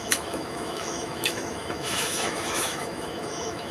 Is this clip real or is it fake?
fake